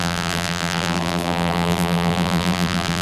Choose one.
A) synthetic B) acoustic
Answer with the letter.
A